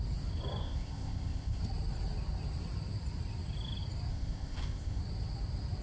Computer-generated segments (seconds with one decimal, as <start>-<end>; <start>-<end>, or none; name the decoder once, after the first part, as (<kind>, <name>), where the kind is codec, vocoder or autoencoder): 0.6-1.6 (codec, ZipCodec); 4.1-5.0